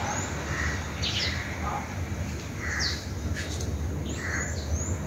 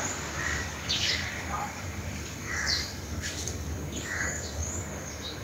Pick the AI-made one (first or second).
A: second